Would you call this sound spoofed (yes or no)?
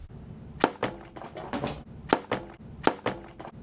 no